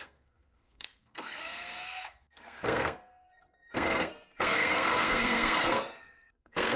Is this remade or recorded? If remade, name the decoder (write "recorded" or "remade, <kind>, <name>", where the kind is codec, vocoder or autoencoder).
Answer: remade, codec, SNAC